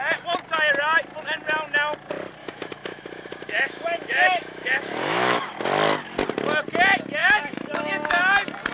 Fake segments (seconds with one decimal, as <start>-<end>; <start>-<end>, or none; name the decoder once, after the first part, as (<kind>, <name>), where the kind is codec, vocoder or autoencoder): 2.4-5.5 (autoencoder, DAC-VAE); 7.2-8.2